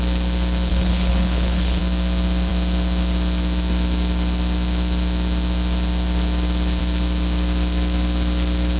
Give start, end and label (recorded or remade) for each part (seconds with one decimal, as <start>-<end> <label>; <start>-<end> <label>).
0.0-0.7 recorded; 0.7-1.8 remade; 1.8-8.8 recorded